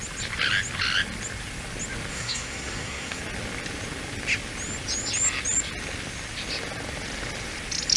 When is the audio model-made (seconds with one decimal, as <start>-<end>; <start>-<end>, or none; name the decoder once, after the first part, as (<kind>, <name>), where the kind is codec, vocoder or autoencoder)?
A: 2.1-3.2 (codec, SNAC)